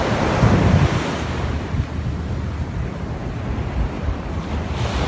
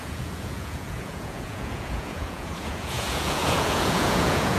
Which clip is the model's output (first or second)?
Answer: second